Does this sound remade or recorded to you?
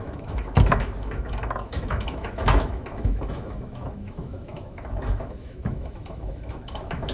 remade